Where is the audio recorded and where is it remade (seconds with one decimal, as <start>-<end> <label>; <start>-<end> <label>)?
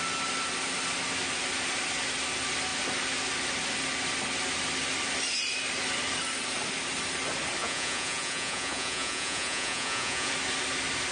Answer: 0.0-7.6 recorded; 7.6-10.3 remade; 10.3-11.1 recorded